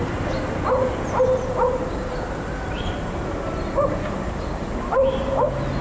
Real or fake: real